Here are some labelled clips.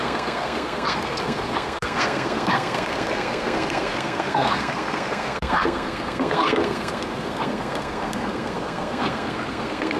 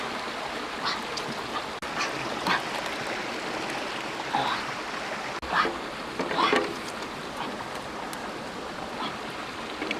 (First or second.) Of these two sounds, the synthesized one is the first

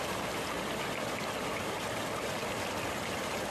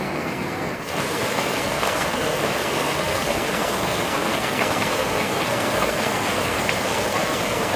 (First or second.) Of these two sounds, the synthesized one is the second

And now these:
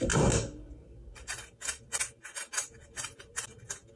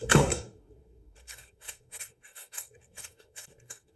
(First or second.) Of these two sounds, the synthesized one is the second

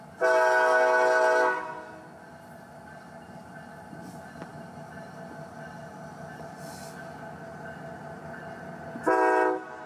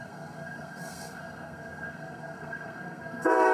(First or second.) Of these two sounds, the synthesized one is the second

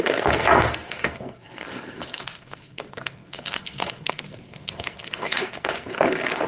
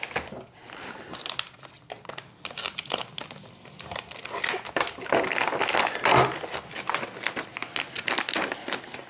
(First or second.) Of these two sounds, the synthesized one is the first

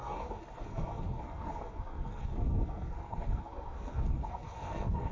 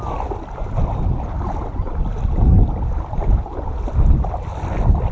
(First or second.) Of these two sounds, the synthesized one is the first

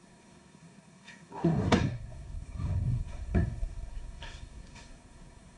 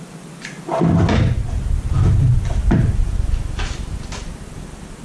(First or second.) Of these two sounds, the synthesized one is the first